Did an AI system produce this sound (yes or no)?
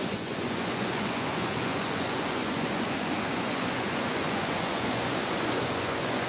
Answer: yes